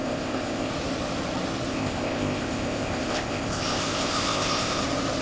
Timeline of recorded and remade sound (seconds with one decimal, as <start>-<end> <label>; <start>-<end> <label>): 0.0-0.7 remade; 0.7-1.7 recorded; 1.7-4.8 remade; 4.8-5.2 recorded